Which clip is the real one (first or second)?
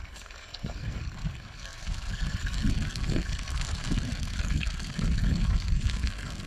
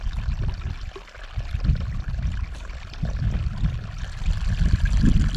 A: second